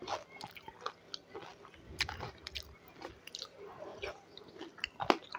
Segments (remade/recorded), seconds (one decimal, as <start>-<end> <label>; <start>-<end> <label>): 0.0-5.4 recorded